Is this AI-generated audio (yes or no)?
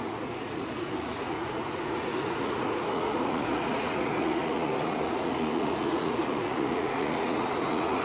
yes